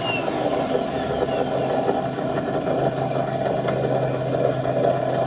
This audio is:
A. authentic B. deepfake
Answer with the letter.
A